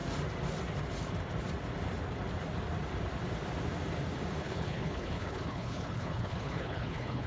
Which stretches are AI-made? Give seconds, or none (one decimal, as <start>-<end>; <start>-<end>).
4.4-7.3